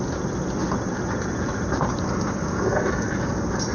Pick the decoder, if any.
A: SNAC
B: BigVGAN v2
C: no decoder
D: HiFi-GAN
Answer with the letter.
C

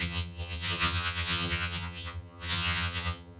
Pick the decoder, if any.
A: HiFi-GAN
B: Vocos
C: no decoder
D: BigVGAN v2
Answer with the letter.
A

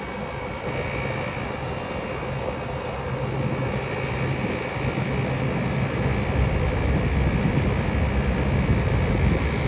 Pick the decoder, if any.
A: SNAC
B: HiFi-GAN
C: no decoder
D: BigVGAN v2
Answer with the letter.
C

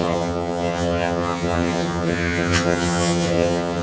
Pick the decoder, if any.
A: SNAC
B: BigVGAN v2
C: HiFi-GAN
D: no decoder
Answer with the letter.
C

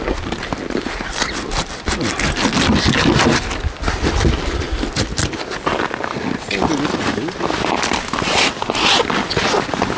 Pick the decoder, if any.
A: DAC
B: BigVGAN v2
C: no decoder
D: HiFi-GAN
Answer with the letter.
C